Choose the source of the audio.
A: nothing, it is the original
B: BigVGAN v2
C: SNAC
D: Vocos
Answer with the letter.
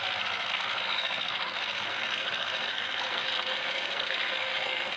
C